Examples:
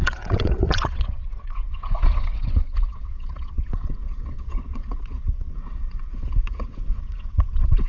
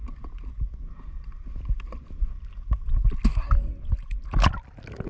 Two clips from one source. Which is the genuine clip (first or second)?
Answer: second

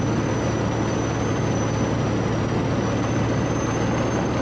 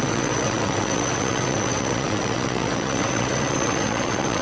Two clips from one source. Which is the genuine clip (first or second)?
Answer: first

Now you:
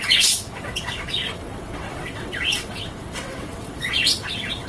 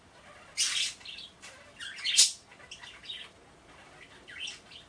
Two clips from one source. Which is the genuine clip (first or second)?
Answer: second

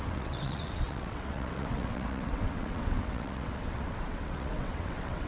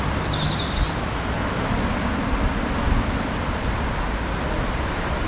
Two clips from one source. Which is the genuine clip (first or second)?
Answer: second